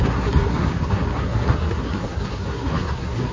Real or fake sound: fake